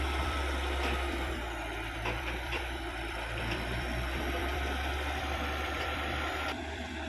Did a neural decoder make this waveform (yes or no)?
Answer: yes